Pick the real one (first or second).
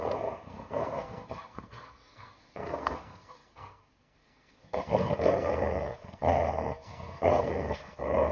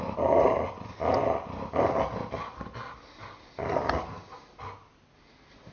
second